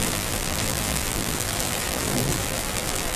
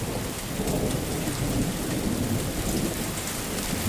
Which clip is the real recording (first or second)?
second